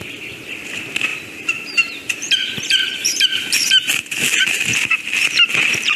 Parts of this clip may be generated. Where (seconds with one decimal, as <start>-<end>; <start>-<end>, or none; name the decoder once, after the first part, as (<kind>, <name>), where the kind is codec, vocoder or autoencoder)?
1.1-4.7 (vocoder, BigVGAN v2)